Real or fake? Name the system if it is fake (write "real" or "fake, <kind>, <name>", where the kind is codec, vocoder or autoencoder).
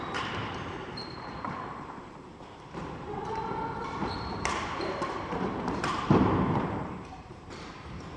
fake, vocoder, BigVGAN v2